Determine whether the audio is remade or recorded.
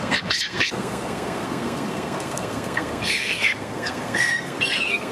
remade